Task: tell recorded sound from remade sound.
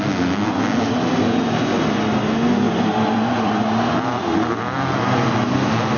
recorded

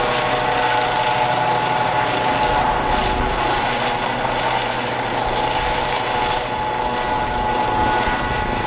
recorded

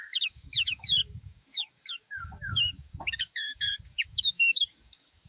remade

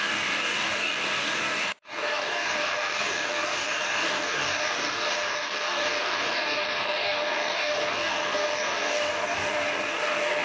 remade